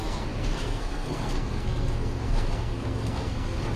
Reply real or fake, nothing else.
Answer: fake